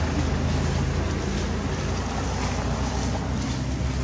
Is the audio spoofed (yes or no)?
no